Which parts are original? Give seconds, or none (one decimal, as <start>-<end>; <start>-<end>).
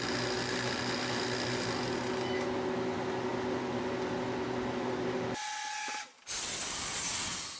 0.0-7.6